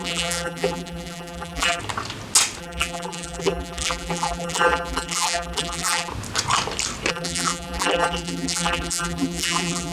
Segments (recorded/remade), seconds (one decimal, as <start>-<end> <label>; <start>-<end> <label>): 0.0-1.8 remade; 1.8-2.6 recorded; 2.6-6.1 remade; 6.1-7.1 recorded; 7.1-9.9 remade